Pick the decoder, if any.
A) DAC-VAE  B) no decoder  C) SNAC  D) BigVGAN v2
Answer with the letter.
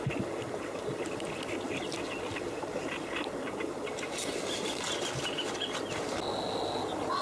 B